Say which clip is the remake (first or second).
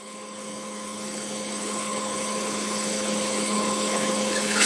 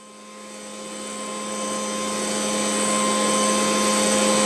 first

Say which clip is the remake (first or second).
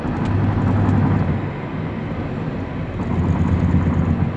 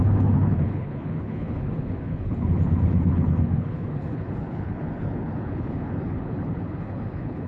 second